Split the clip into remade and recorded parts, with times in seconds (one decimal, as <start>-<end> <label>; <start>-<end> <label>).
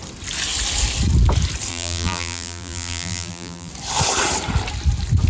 0.0-1.7 recorded; 1.7-3.7 remade; 3.7-5.3 recorded